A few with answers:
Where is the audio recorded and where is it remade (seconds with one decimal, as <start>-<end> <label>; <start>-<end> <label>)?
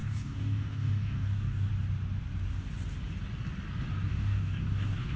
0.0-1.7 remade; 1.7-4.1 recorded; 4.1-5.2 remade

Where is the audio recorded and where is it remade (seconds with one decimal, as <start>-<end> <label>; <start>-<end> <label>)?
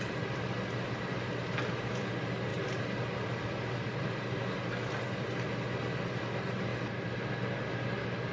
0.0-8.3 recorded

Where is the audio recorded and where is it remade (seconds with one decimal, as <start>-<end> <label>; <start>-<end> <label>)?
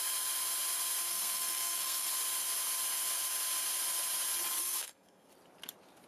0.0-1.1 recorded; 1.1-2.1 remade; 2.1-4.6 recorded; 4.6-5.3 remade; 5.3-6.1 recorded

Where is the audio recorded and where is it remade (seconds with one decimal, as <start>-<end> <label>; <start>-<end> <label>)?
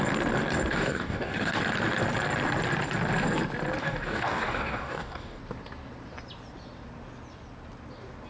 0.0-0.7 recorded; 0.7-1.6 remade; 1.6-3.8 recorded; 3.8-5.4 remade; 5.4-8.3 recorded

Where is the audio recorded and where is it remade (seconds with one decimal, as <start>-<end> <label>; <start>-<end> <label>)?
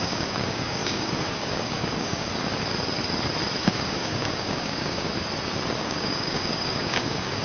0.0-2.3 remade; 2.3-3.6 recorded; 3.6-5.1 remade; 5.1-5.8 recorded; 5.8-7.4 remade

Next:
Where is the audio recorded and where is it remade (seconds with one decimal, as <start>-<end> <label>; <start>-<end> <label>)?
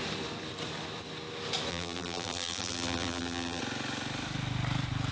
0.0-1.7 recorded; 1.7-3.6 remade; 3.6-5.1 recorded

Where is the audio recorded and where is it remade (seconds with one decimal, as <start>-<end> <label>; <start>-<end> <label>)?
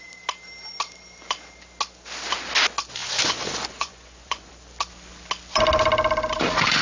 0.0-3.0 recorded; 3.0-4.5 remade; 4.5-6.8 recorded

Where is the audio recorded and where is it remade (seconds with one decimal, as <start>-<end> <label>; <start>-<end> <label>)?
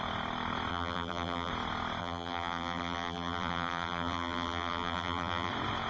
0.0-0.7 recorded; 0.7-1.5 remade; 1.5-2.0 recorded; 2.0-5.5 remade; 5.5-5.9 recorded